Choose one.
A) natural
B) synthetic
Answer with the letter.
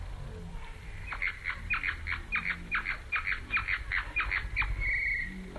A